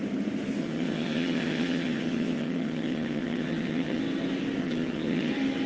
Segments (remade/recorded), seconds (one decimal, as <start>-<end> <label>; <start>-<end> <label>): 0.0-0.6 recorded; 0.6-4.0 remade; 4.0-4.6 recorded; 4.6-5.3 remade; 5.3-5.7 recorded